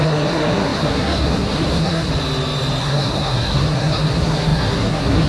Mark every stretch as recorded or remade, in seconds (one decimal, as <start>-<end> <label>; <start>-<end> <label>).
0.0-2.1 remade; 2.1-2.8 recorded; 2.8-5.3 remade

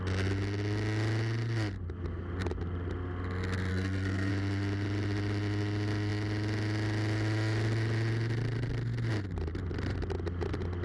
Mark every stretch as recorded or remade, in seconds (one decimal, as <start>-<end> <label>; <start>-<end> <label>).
0.0-3.7 recorded; 3.7-4.3 remade; 4.3-10.8 recorded

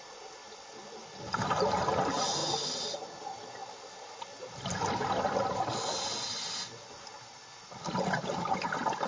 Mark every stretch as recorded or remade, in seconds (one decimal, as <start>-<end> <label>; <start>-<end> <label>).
0.0-9.1 recorded